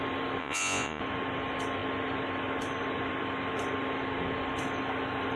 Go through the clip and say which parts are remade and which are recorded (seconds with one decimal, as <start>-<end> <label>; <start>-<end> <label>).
0.0-0.4 recorded; 0.4-1.0 remade; 1.0-5.4 recorded